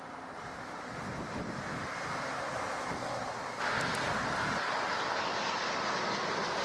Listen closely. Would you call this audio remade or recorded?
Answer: recorded